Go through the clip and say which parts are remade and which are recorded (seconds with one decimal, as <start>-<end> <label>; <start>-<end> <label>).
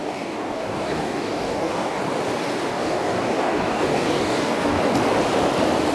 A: 0.0-2.0 remade; 2.0-2.7 recorded; 2.7-4.8 remade; 4.8-5.9 recorded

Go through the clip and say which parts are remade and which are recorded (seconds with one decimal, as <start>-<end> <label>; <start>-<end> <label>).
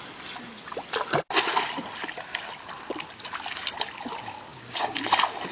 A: 0.0-4.5 recorded; 4.5-5.0 remade; 5.0-5.5 recorded